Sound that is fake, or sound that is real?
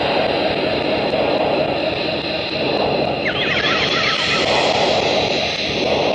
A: real